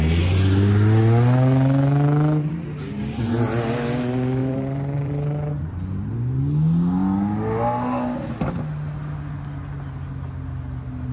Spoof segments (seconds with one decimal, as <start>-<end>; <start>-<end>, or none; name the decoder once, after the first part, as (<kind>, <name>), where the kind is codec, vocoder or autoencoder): 4.4-6.1 (vocoder, BigVGAN v2)